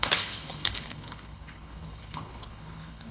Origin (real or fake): fake